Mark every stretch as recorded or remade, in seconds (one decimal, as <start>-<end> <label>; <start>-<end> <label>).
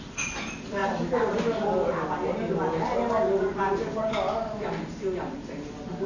0.0-6.1 recorded